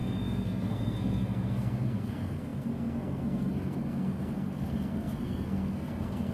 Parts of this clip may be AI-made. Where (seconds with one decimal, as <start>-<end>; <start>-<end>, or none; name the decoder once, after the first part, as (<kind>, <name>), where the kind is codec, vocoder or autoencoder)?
0.0-6.3 (codec, SNAC)